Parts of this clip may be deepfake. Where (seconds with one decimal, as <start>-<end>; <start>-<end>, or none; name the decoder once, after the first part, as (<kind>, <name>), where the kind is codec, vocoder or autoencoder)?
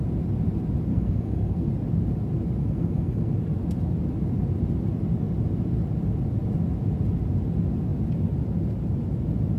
0.9-1.7 (codec, SNAC); 2.6-3.3